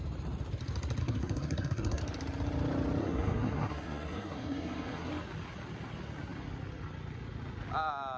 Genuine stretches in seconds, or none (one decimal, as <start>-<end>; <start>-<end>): 0.0-1.0; 2.0-3.0; 5.1-8.2